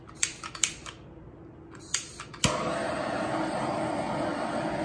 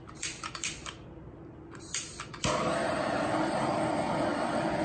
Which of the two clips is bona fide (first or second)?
first